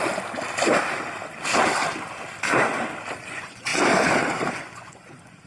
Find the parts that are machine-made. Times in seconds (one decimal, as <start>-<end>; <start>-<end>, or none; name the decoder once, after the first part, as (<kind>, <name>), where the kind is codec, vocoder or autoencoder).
3.3-3.7 (vocoder, Vocos); 4.5-5.5